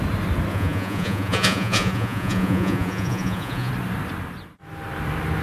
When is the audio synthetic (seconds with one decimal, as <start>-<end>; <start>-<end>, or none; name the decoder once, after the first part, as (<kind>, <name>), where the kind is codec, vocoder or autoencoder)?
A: 0.5-3.7 (vocoder, Vocos)